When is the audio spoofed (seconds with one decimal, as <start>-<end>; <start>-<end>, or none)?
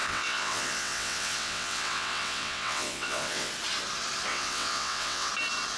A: 0.0-3.5; 4.3-5.3